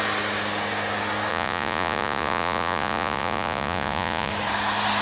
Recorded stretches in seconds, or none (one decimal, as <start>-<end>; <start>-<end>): 0.0-1.3; 4.3-5.0